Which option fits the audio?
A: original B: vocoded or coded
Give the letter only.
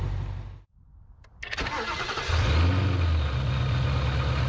A